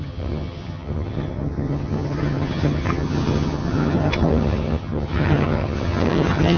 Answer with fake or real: fake